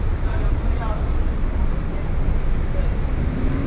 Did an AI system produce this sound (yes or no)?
no